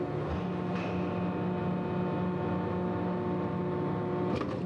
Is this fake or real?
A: real